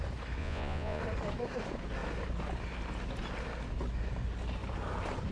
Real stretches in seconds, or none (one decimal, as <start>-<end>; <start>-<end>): 0.0-0.4; 1.0-5.3